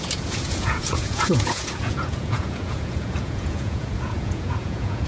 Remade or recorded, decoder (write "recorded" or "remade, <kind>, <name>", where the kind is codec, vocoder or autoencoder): remade, vocoder, Vocos